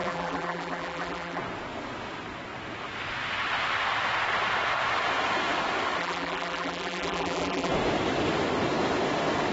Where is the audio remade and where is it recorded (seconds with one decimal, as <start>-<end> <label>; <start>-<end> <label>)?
0.0-1.4 remade; 1.4-6.0 recorded; 6.0-7.7 remade; 7.7-9.5 recorded